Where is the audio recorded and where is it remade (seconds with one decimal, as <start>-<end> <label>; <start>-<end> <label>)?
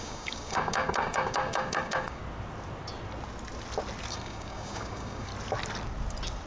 0.0-2.2 remade; 2.2-4.1 recorded; 4.1-5.3 remade; 5.3-6.5 recorded